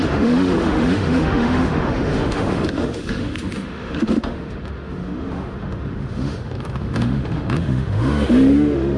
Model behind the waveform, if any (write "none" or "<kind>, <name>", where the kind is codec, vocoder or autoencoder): autoencoder, DAC-VAE